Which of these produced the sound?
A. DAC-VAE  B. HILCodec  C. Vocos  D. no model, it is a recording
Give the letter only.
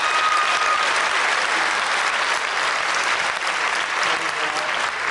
D